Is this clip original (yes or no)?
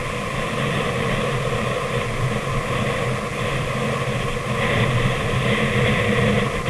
yes